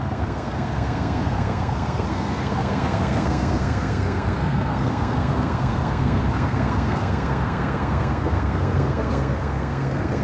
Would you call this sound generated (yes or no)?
yes